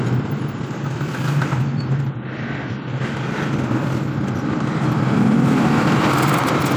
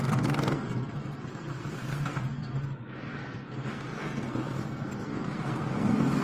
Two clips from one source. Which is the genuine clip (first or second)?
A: first